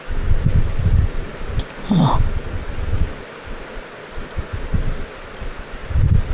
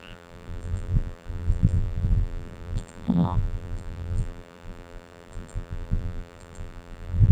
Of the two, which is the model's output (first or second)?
second